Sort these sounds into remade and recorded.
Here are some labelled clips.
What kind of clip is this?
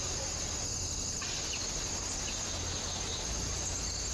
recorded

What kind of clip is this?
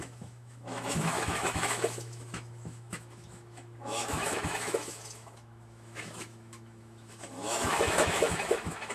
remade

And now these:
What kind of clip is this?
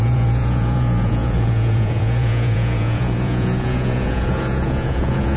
remade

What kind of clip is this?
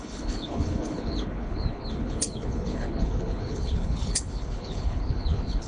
remade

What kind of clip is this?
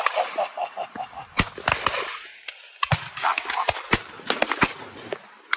recorded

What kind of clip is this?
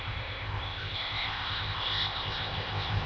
remade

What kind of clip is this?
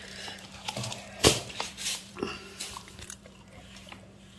remade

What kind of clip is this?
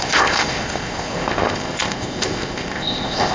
remade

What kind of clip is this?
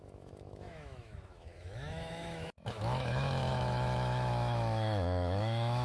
remade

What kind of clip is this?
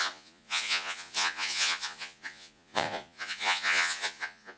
remade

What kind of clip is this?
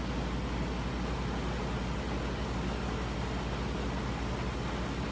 recorded